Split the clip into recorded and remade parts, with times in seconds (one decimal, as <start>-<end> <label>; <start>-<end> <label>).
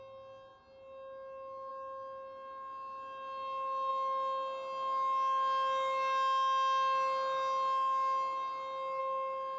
0.0-9.6 recorded